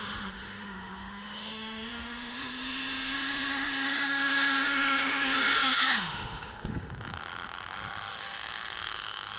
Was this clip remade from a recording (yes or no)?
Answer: yes